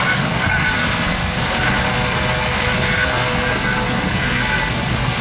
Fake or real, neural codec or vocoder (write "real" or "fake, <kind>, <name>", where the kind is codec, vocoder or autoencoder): fake, codec, SNAC